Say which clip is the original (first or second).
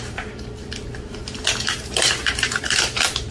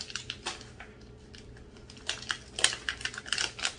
second